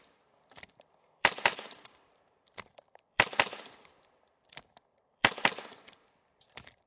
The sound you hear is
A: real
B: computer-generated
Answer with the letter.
B